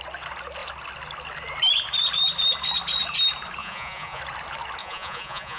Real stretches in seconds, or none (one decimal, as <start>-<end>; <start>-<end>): 0.0-3.6; 4.2-4.8